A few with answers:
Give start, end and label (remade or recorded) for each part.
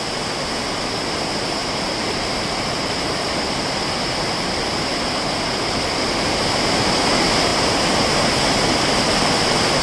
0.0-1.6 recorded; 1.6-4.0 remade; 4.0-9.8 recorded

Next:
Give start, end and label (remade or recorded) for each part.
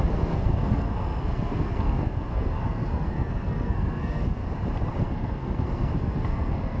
0.0-4.4 remade; 4.4-4.9 recorded; 4.9-6.8 remade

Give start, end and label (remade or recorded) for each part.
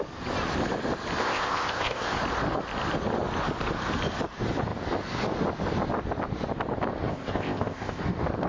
0.0-1.2 recorded; 1.2-2.2 remade; 2.2-7.1 recorded; 7.1-8.0 remade; 8.0-8.5 recorded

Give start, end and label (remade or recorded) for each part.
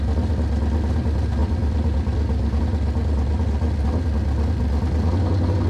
0.0-1.4 recorded; 1.4-2.6 remade; 2.6-5.7 recorded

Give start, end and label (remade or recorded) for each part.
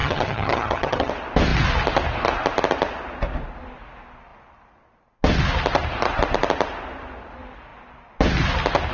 0.0-1.1 remade; 1.1-8.9 recorded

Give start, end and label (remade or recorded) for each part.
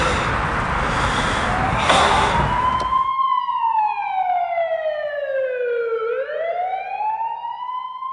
0.0-1.7 recorded; 1.7-2.3 remade; 2.3-8.1 recorded